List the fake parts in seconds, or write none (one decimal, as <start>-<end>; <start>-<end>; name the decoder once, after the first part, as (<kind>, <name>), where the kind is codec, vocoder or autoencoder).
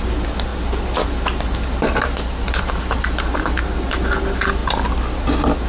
none